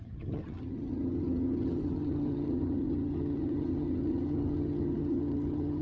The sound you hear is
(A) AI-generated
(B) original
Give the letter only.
A